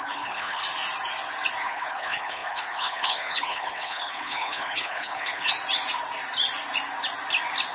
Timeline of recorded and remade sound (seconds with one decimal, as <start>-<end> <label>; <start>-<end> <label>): 0.0-0.6 remade; 0.6-1.6 recorded; 1.6-5.5 remade; 5.5-7.7 recorded